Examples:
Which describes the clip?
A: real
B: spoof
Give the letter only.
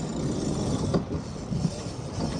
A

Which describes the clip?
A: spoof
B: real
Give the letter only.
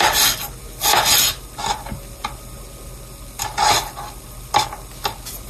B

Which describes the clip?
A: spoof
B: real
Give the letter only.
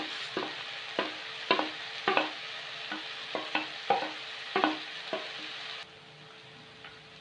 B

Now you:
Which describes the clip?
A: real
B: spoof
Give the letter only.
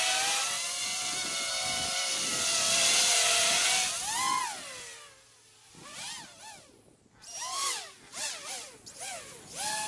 A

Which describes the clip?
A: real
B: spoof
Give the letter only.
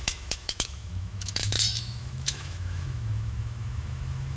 B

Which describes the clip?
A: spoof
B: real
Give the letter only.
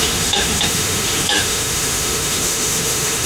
A